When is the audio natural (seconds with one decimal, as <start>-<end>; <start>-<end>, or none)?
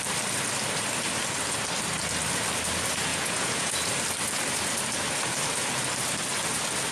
0.0-3.1; 3.9-6.9